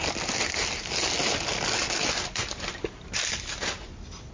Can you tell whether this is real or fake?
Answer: real